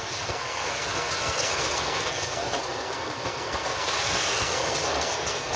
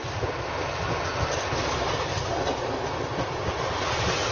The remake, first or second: first